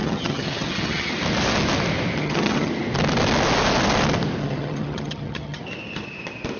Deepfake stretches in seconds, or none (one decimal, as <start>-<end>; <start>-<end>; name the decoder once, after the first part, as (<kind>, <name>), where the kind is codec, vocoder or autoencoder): 0.0-1.1 (vocoder, HiFi-GAN); 2.2-2.7; 4.4-5.6